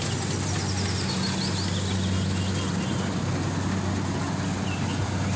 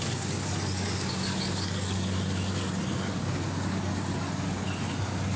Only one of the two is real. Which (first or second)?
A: first